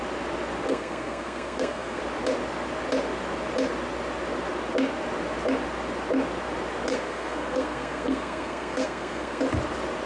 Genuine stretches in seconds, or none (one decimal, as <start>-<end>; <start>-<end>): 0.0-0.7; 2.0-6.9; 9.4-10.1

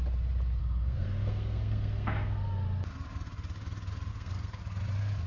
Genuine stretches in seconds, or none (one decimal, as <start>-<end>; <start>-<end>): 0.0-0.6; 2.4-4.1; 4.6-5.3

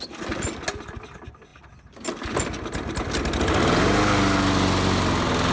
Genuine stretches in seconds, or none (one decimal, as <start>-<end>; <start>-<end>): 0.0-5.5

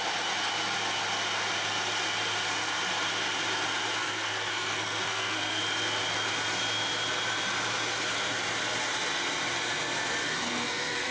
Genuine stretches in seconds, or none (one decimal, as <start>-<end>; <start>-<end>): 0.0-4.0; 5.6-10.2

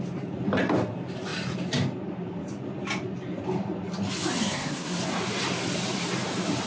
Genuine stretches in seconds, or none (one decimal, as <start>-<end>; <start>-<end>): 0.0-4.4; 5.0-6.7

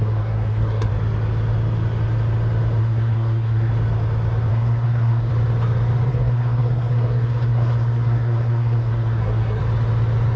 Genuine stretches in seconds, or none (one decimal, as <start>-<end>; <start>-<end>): 0.9-2.8; 3.7-4.5; 5.3-6.1; 9.6-10.4